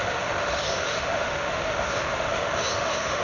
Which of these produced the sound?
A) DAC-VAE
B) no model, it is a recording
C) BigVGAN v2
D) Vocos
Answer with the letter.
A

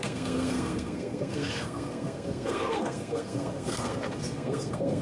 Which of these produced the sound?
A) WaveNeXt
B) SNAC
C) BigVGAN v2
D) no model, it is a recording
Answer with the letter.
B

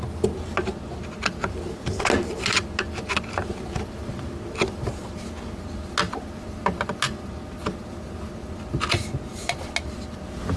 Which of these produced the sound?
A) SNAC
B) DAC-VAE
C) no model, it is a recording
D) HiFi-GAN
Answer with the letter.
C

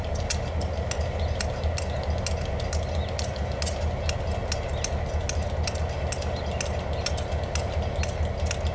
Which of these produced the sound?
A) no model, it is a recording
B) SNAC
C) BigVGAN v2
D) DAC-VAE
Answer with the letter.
A